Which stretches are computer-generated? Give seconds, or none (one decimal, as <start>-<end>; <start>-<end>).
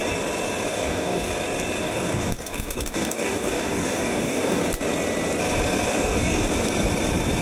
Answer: 0.7-1.3; 1.8-4.6; 5.9-6.5